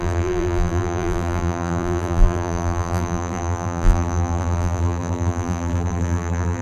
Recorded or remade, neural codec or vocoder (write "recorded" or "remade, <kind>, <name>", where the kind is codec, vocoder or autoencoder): remade, vocoder, BigVGAN v2